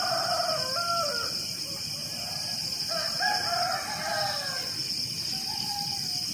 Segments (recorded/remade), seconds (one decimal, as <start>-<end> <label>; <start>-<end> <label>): 0.0-6.3 recorded